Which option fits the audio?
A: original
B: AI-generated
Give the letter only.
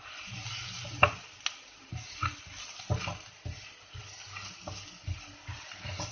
A